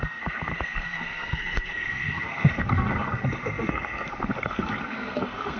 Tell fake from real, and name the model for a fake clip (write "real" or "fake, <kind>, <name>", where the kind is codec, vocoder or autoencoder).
fake, codec, SNAC